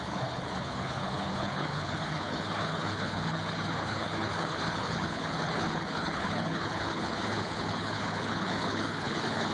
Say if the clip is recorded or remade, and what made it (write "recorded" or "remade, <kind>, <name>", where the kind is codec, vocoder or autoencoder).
remade, codec, HILCodec